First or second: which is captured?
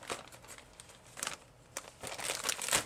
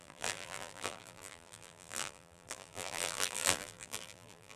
first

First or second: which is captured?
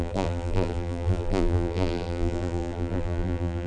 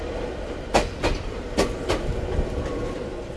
second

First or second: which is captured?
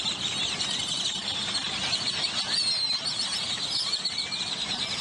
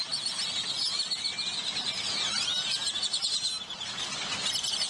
second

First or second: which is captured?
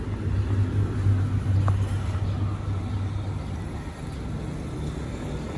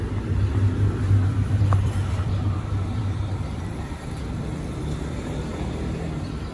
first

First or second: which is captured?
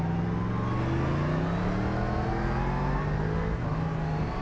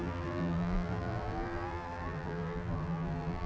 first